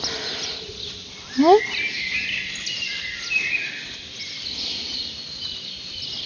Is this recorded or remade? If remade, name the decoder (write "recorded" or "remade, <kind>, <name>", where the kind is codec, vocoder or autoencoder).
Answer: recorded